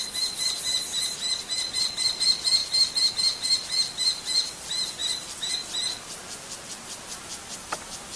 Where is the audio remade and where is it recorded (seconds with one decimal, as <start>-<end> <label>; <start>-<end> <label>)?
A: 0.0-8.2 recorded